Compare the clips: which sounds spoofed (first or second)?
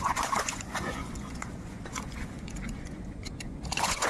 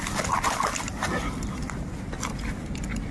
first